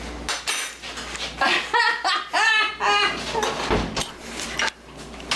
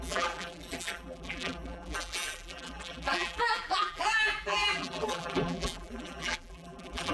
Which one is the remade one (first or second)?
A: second